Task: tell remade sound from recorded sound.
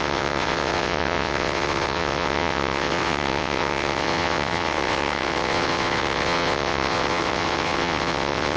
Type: remade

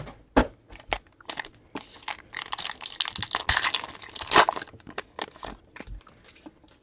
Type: recorded